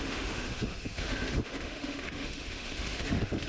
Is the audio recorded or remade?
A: remade